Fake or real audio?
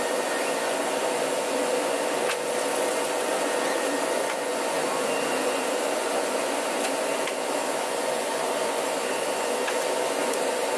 fake